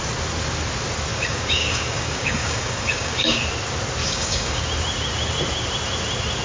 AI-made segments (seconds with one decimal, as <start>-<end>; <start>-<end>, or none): 1.1-3.4; 4.0-4.6